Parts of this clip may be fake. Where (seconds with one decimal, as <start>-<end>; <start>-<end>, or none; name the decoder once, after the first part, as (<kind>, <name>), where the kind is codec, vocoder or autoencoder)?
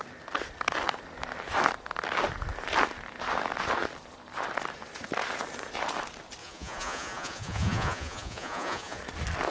6.4-9.0 (vocoder, Vocos)